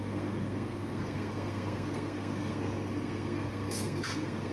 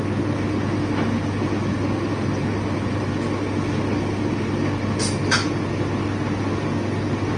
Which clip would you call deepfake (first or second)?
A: first